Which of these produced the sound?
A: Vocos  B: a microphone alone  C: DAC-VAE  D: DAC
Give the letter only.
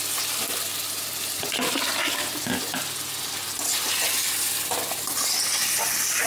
B